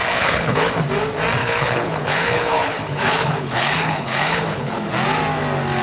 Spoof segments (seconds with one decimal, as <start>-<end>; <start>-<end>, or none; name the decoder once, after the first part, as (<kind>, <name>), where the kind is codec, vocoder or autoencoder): 0.0-0.7 (codec, HILCodec); 1.4-4.9